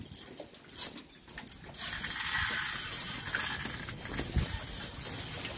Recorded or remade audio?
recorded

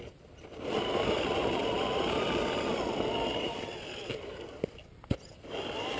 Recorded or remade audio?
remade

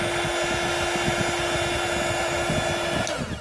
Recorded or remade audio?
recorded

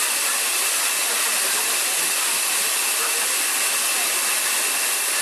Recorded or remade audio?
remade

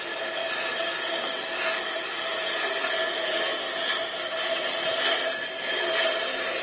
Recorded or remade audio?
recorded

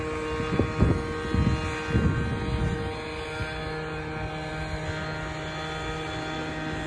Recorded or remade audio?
recorded